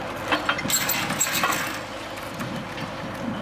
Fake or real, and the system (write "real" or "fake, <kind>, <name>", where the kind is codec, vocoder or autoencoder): real